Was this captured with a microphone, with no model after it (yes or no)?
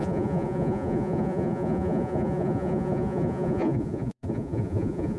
no